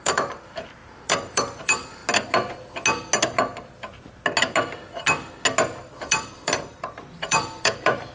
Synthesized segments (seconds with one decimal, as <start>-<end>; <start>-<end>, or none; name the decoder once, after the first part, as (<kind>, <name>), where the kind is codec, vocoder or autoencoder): 0.0-2.0 (vocoder, BigVGAN v2); 5.9-8.1